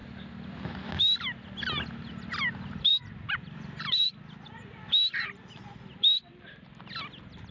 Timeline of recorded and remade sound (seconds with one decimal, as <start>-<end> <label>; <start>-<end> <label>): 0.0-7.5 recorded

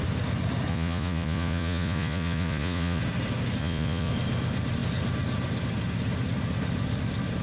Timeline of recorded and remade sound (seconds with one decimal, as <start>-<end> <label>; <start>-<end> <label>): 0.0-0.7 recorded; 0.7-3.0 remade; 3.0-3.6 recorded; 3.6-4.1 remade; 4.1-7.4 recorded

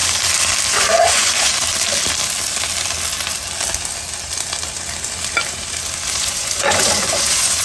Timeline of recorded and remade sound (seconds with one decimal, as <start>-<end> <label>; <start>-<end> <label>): 0.0-0.7 recorded; 0.7-1.5 remade; 1.5-6.1 recorded; 6.1-7.6 remade

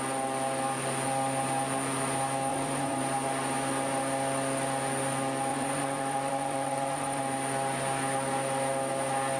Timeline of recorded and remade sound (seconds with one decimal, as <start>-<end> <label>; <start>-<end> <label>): 0.0-2.5 recorded; 2.5-3.0 remade; 3.0-5.5 recorded; 5.5-7.2 remade; 7.2-9.4 recorded

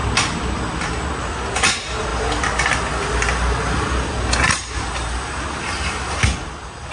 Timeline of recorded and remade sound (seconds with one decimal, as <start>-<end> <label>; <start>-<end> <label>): 0.0-6.9 recorded